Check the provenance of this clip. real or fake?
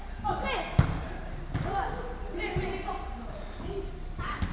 real